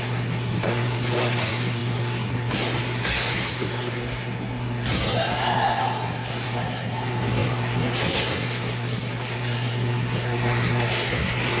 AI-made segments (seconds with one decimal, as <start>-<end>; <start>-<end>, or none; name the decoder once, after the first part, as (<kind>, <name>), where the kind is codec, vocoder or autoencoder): 0.0-11.6 (codec, SNAC)